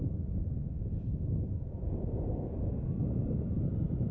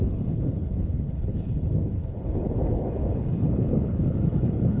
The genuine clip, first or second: first